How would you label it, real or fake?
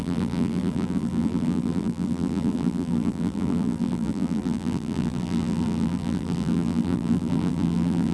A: fake